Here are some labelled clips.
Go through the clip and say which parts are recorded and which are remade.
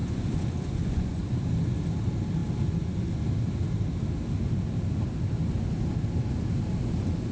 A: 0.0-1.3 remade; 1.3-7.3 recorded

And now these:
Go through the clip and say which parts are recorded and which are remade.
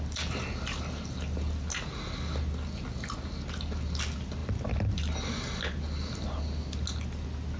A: 0.0-7.6 recorded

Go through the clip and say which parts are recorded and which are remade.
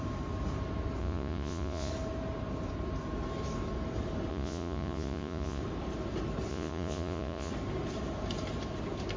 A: 0.0-1.0 recorded; 1.0-1.9 remade; 1.9-4.3 recorded; 4.3-5.6 remade; 5.6-6.5 recorded; 6.5-7.5 remade; 7.5-9.2 recorded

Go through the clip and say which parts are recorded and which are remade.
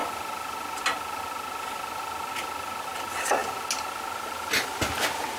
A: 0.0-5.4 recorded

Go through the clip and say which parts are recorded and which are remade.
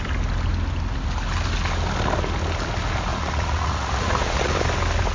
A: 0.0-3.1 recorded; 3.1-4.5 remade; 4.5-5.1 recorded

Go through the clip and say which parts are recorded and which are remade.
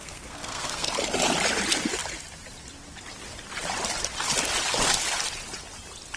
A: 0.0-0.9 remade; 0.9-6.2 recorded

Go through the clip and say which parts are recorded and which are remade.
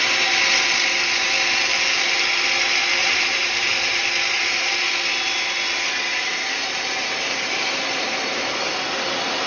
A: 0.0-3.0 recorded; 3.0-3.7 remade; 3.7-4.4 recorded; 4.4-4.9 remade; 4.9-6.1 recorded; 6.1-9.1 remade; 9.1-9.5 recorded